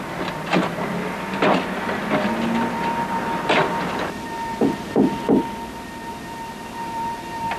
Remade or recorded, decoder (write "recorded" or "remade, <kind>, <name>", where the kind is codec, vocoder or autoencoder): recorded